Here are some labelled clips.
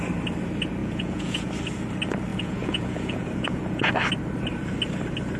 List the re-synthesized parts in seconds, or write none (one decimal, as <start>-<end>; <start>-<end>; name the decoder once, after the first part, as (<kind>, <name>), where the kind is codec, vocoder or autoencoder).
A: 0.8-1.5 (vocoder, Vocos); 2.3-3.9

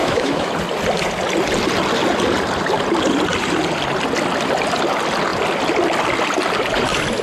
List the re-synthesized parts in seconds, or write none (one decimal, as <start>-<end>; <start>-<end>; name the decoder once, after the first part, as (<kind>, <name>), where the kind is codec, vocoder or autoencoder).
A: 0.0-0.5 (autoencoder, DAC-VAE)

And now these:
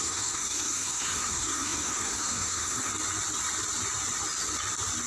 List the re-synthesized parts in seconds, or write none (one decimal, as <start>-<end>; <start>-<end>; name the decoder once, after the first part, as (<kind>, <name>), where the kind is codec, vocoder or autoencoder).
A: 0.0-2.9 (codec, SNAC)